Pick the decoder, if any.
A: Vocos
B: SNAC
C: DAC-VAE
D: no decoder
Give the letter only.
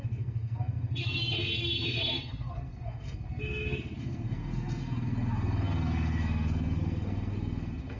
B